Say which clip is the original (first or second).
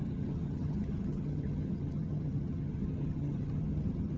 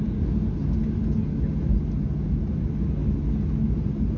second